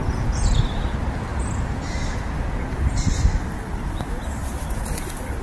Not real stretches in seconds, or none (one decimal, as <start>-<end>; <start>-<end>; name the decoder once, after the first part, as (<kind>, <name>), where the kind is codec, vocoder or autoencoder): 0.0-0.6 (vocoder, Vocos)